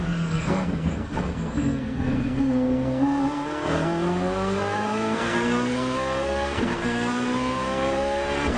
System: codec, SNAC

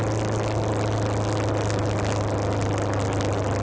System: none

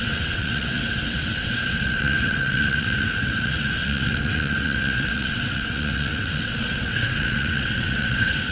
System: vocoder, WaveNeXt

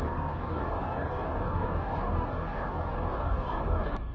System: codec, DAC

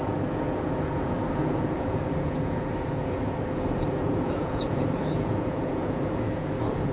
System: vocoder, Vocos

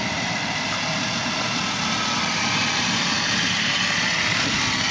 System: none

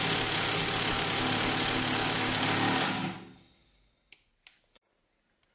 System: none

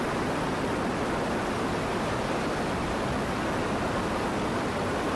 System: none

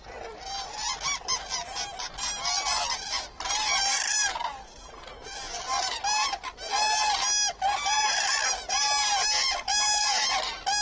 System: none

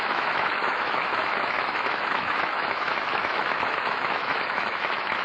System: autoencoder, DAC-VAE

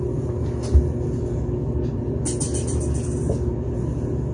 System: none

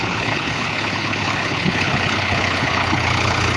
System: codec, HILCodec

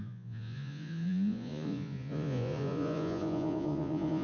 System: vocoder, Vocos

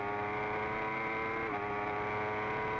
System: none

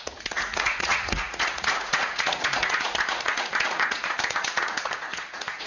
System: vocoder, Vocos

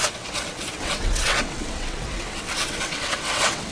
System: vocoder, WaveNeXt